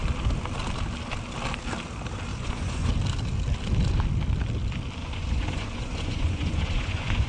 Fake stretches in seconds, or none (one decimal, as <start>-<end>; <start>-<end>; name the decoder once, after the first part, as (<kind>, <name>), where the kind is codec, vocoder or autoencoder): 2.3-2.9 (vocoder, Vocos); 5.0-7.3